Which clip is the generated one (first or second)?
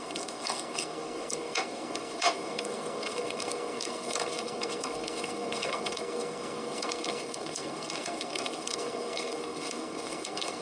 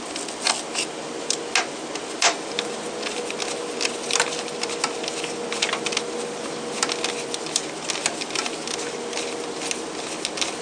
first